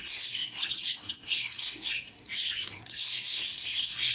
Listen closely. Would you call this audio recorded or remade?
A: remade